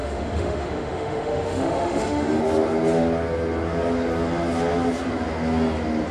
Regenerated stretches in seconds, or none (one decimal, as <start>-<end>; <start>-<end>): 0.0-2.4